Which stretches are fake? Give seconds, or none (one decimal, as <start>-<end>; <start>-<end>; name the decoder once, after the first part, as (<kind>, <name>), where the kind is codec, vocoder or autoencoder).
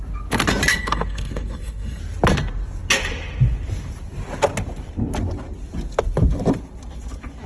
0.7-2.0 (codec, SNAC)